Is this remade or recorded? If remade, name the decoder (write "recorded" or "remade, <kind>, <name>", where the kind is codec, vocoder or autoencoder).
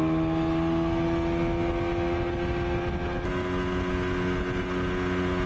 recorded